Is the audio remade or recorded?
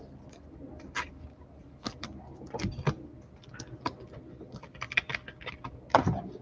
recorded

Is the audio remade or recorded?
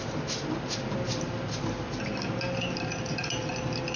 recorded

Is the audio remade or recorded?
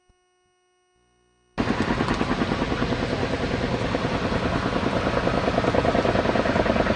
recorded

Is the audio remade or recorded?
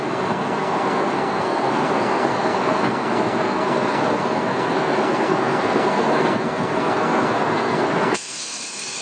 remade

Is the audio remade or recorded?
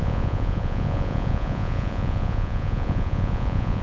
remade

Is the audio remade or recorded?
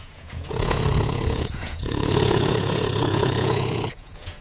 remade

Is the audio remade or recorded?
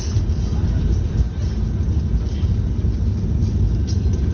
recorded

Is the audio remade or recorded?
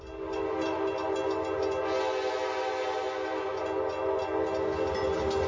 recorded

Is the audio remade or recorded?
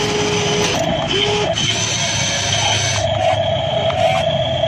recorded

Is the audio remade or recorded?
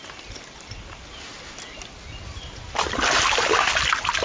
recorded